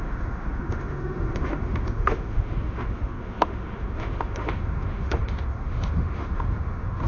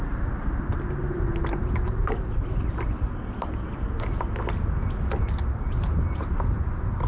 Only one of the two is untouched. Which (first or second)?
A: second